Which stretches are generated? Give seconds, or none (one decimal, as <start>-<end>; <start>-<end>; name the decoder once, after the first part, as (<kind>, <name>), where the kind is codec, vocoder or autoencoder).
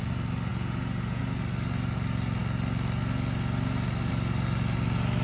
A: 0.5-1.2 (vocoder, Vocos)